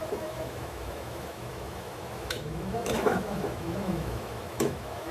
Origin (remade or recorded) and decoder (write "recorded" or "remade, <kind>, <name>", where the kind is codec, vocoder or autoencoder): remade, autoencoder, DAC-VAE